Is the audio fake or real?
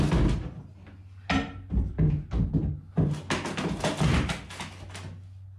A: real